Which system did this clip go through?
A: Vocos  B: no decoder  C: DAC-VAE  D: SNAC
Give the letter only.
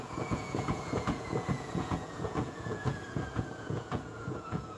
A